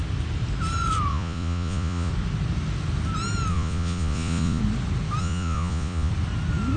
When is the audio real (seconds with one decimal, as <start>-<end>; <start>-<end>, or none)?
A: 0.0-1.1; 2.1-3.5; 4.6-5.2; 6.1-6.8